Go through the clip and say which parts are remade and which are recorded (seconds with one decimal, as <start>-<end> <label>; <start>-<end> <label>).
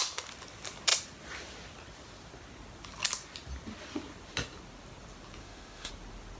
0.0-5.4 recorded; 5.4-5.9 remade; 5.9-6.4 recorded